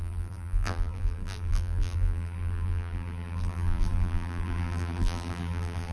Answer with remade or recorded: remade